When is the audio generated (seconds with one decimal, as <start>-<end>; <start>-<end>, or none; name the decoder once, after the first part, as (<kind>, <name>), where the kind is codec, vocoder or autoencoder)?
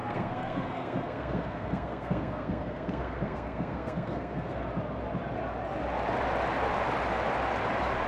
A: 0.0-4.6 (codec, SNAC)